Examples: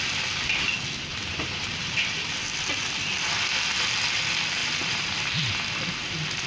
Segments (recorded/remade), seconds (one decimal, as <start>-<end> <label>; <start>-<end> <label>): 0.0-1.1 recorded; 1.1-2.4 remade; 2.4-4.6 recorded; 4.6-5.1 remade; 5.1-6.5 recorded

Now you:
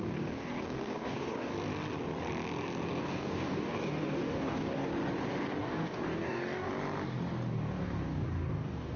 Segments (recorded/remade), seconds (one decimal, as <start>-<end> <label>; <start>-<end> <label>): 0.0-1.5 remade; 1.5-3.0 recorded; 3.0-4.9 remade; 4.9-5.6 recorded; 5.6-6.7 remade; 6.7-7.5 recorded; 7.5-9.0 remade

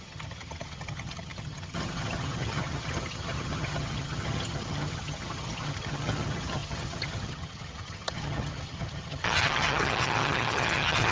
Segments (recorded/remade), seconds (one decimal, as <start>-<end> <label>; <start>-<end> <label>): 0.0-11.1 remade